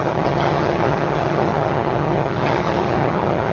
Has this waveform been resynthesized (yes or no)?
yes